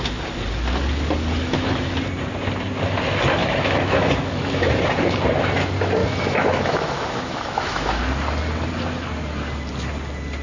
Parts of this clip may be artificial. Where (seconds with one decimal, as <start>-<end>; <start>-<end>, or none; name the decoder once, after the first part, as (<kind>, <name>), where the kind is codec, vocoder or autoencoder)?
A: 1.4-1.9 (autoencoder, DAC-VAE); 3.4-4.7; 6.0-8.0